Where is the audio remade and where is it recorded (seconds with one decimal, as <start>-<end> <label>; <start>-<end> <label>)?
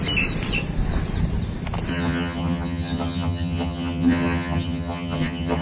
0.0-1.9 recorded; 1.9-5.6 remade